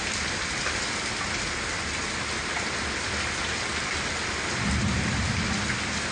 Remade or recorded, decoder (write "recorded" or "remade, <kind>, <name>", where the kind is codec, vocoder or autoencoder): recorded